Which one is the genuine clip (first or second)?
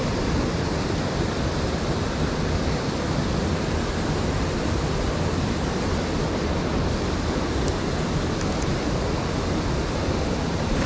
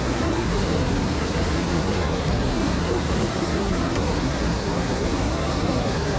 first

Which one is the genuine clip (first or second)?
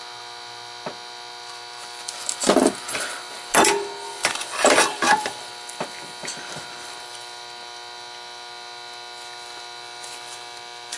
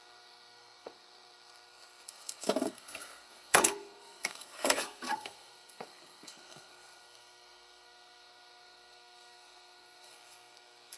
first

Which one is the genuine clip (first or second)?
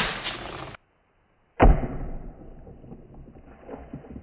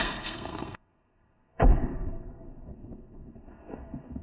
first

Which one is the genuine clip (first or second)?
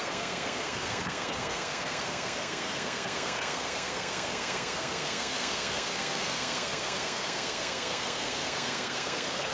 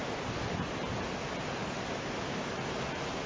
second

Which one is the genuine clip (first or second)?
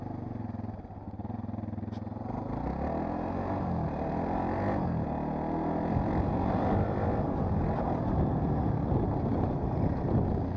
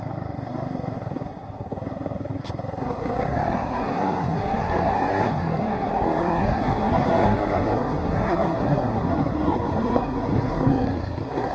first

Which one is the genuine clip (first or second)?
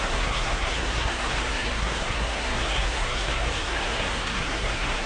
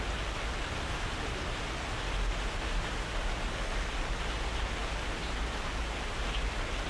second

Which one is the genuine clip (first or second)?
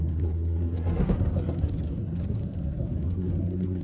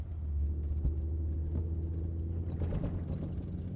second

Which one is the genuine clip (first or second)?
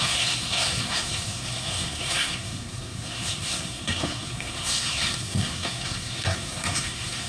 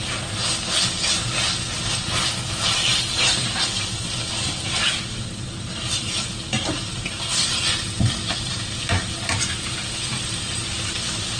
second